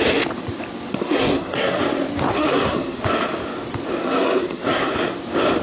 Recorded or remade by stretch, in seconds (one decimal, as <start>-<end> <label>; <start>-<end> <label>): 0.0-0.9 recorded; 0.9-1.8 remade; 1.8-2.3 recorded; 2.3-3.0 remade; 3.0-4.0 recorded; 4.0-4.9 remade; 4.9-5.6 recorded